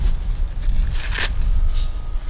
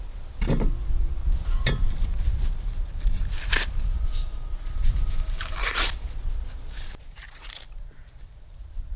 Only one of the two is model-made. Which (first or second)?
second